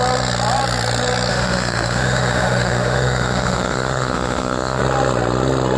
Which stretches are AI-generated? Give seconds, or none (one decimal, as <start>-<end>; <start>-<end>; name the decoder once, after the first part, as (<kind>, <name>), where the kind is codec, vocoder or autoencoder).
1.3-4.8 (autoencoder, DAC-VAE)